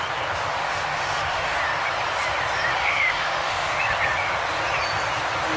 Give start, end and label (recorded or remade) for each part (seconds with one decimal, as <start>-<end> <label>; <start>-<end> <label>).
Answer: 0.0-0.6 recorded; 0.6-1.6 remade; 1.6-2.7 recorded; 2.7-3.8 remade; 3.8-5.6 recorded